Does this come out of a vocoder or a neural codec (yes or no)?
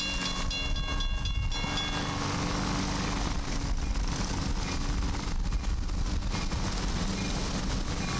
no